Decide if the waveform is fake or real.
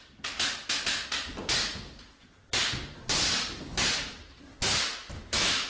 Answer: real